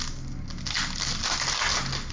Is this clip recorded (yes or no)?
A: yes